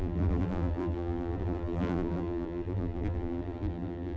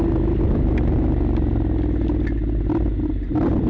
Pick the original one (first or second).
second